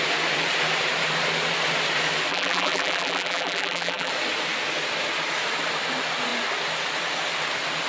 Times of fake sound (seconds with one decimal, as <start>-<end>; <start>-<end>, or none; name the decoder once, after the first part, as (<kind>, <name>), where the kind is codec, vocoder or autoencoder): 2.3-4.1 (vocoder, BigVGAN v2)